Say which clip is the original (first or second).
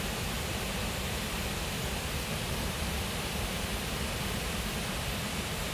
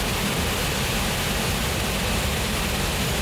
second